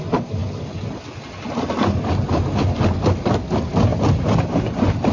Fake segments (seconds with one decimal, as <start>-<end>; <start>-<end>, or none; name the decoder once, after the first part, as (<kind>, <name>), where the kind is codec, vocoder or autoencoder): none